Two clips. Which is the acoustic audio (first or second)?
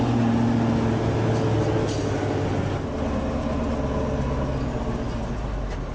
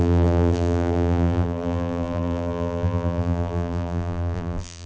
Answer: first